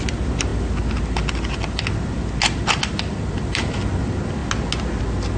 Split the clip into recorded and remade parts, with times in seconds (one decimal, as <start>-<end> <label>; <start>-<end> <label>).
0.0-5.4 recorded